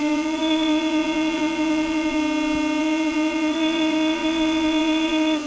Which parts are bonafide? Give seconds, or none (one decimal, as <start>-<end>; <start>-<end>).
2.2-2.8

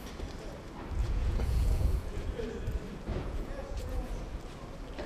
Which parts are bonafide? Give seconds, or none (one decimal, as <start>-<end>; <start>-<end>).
0.0-1.0; 2.4-3.1; 4.1-5.1

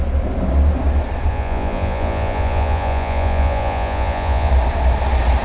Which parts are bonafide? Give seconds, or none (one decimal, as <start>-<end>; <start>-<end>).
0.0-1.3; 4.5-5.4

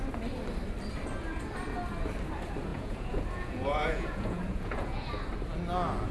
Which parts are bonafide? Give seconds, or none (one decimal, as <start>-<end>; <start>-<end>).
0.0-2.7; 5.1-6.1

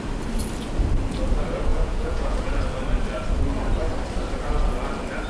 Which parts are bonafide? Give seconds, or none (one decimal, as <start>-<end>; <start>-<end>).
0.0-1.7; 2.5-5.3

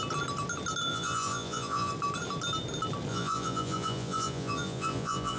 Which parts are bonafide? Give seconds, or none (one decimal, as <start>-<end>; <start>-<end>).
0.0-0.9; 1.9-3.1